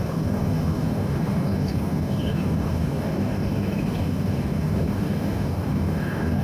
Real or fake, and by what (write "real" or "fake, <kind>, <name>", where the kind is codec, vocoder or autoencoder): fake, codec, DAC